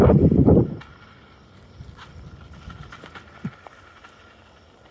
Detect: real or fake real